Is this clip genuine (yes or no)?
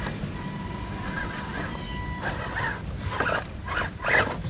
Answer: yes